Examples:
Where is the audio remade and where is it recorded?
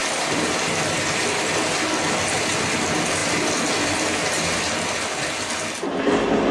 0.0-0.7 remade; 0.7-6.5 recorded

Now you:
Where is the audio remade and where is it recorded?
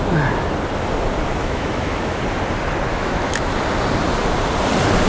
0.0-1.4 recorded; 1.4-2.2 remade; 2.2-2.9 recorded; 2.9-3.5 remade; 3.5-5.1 recorded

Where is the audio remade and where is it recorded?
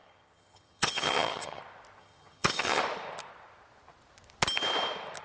0.0-1.6 remade; 1.6-2.0 recorded; 2.0-2.8 remade; 2.8-5.2 recorded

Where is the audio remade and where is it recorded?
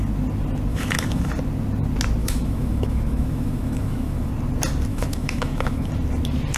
0.0-0.7 recorded; 0.7-1.3 remade; 1.3-2.2 recorded; 2.2-4.3 remade; 4.3-4.9 recorded; 4.9-5.9 remade; 5.9-6.6 recorded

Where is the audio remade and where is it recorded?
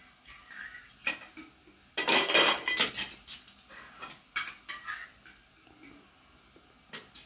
0.0-7.3 recorded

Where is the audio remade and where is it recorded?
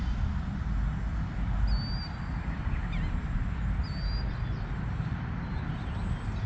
0.0-6.5 recorded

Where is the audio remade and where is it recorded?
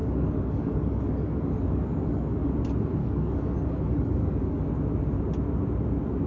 0.0-2.5 remade; 2.5-3.0 recorded; 3.0-4.7 remade; 4.7-6.3 recorded